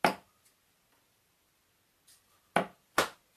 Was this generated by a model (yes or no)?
no